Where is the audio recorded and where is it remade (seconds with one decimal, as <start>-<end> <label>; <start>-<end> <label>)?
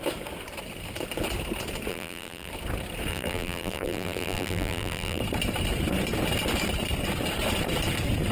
0.0-1.9 recorded; 1.9-2.5 remade; 2.5-3.1 recorded; 3.1-5.2 remade; 5.2-8.3 recorded